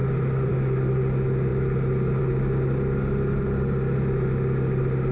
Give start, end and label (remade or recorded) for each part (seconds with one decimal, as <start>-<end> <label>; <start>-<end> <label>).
0.0-5.1 recorded